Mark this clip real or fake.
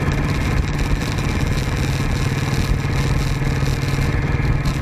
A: real